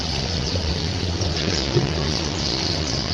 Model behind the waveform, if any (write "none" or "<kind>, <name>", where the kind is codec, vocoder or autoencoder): vocoder, WaveNeXt